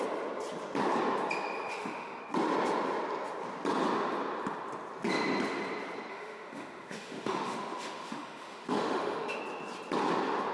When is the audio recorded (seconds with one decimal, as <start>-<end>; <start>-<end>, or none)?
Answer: 0.0-1.7; 2.2-6.1; 9.4-10.5